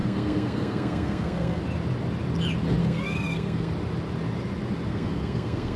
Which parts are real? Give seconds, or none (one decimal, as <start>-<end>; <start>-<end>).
1.6-2.8; 3.7-4.9